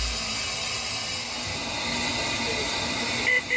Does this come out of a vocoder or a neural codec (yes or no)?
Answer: no